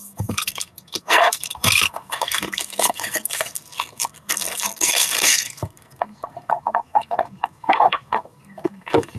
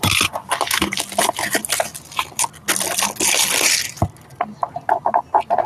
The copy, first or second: first